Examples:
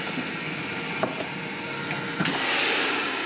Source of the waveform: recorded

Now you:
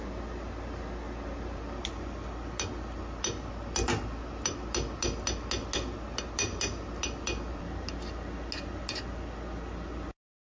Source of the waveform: recorded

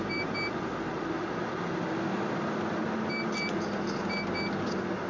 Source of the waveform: recorded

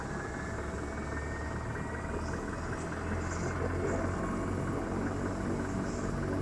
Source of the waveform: recorded